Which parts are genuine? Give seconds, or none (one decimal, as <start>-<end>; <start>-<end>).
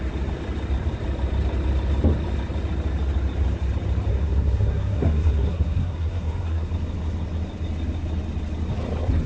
0.0-4.1; 6.7-9.3